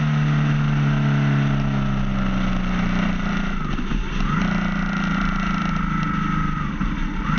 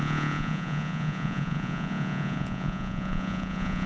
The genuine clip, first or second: first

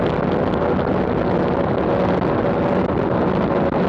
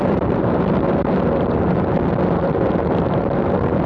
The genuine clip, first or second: first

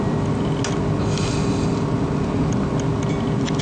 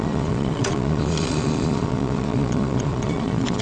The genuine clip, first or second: first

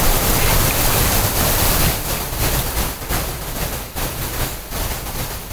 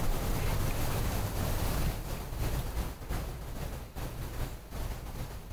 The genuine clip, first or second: second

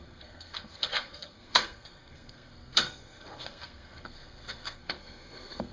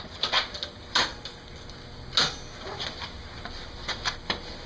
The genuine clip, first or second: second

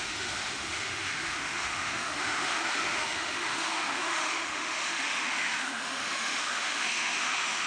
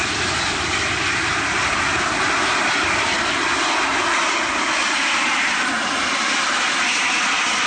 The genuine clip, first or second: second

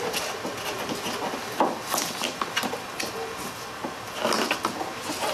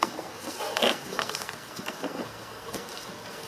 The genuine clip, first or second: first